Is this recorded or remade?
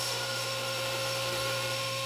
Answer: remade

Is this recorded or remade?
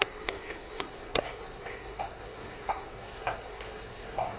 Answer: remade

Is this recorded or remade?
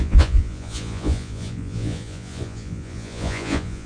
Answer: remade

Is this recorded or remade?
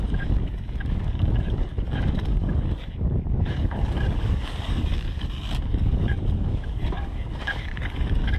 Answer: remade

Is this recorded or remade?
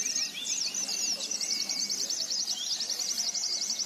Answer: remade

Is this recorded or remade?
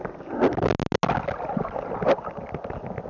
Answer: recorded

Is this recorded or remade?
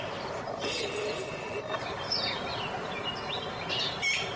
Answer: recorded